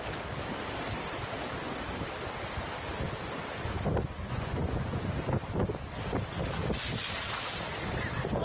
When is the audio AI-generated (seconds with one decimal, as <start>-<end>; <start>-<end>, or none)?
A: 4.2-5.1